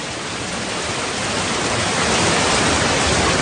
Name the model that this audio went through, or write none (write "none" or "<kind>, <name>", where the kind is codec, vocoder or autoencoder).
none